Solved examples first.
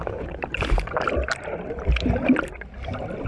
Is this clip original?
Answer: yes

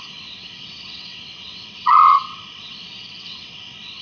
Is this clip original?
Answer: no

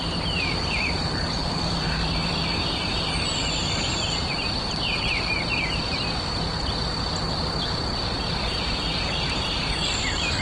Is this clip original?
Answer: no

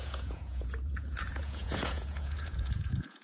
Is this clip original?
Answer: no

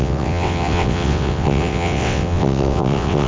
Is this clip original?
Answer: no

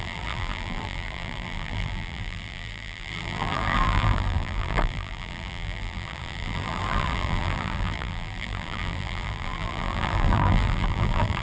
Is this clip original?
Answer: no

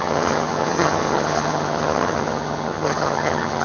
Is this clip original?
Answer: no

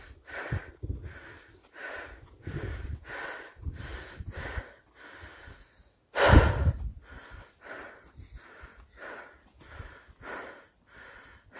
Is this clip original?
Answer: yes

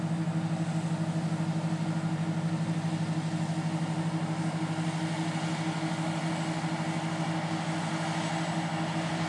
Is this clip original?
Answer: yes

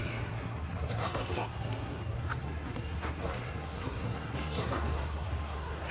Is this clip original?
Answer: no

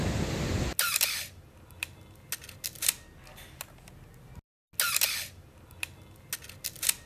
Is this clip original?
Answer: yes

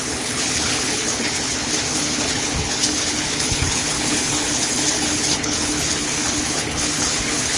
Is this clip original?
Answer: no